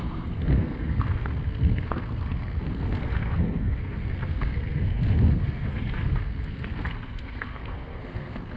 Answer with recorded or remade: remade